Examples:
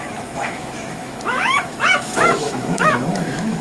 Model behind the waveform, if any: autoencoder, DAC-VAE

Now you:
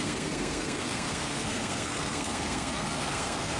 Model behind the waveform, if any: codec, SNAC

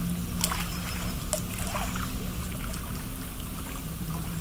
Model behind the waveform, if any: none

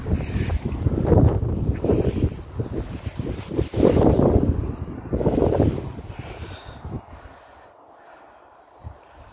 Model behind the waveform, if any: none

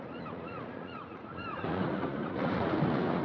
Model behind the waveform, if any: vocoder, Vocos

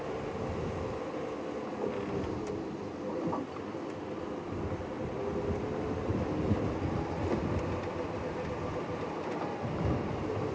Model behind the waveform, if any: none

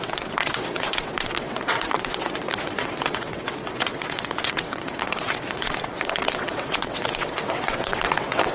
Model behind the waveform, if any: vocoder, WaveNeXt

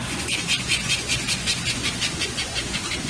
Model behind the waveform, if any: vocoder, Vocos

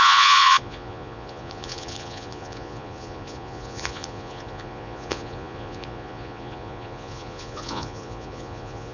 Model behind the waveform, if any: vocoder, Vocos